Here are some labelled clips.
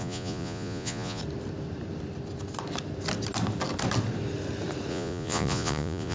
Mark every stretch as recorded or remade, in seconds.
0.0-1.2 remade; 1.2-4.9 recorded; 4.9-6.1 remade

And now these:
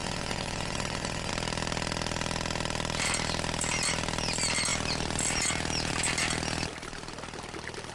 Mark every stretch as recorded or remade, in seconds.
0.0-1.3 remade; 1.3-7.9 recorded

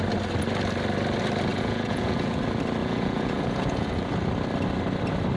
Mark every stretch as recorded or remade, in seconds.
0.0-1.5 recorded; 1.5-2.4 remade; 2.4-2.8 recorded; 2.8-4.1 remade; 4.1-5.4 recorded

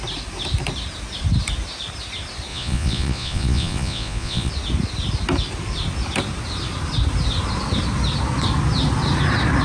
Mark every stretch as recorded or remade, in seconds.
0.0-2.5 recorded; 2.5-4.5 remade; 4.5-9.6 recorded